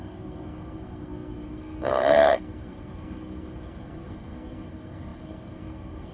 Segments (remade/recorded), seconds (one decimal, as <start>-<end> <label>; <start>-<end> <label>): 0.0-6.1 remade

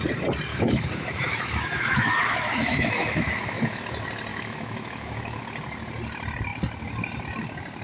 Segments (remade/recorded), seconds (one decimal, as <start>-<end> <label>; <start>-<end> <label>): 0.0-0.5 recorded; 0.5-3.8 remade; 3.8-4.3 recorded; 4.3-5.4 remade; 5.4-7.8 recorded